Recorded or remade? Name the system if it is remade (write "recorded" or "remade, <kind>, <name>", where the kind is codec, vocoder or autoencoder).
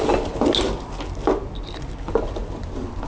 recorded